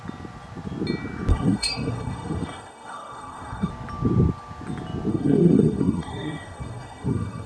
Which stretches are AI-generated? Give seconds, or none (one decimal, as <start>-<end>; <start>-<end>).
1.3-3.7; 5.1-7.5